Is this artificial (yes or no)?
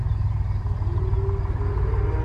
no